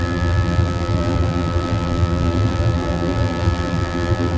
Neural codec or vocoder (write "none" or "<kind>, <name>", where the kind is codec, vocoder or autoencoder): vocoder, BigVGAN v2